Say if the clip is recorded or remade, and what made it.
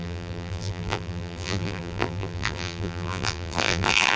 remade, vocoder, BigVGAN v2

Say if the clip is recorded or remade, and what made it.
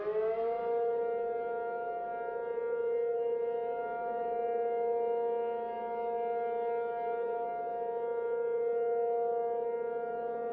recorded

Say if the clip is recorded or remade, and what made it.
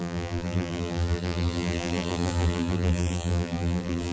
remade, vocoder, BigVGAN v2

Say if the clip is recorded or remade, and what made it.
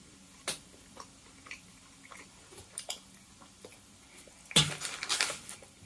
recorded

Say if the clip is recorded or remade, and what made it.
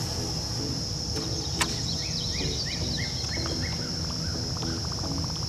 recorded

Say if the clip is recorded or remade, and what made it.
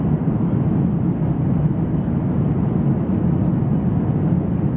recorded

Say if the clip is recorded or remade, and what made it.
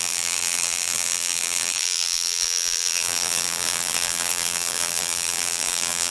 remade, vocoder, BigVGAN v2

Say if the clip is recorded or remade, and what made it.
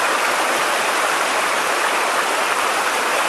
recorded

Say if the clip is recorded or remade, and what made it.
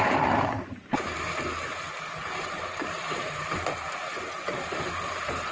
remade, vocoder, BigVGAN v2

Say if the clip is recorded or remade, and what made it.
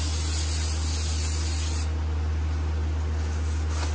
recorded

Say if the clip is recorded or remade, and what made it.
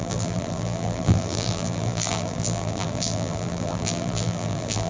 remade, vocoder, BigVGAN v2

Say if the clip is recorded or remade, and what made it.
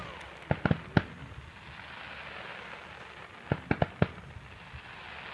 recorded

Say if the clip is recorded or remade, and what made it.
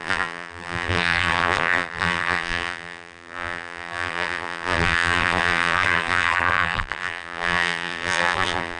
remade, vocoder, BigVGAN v2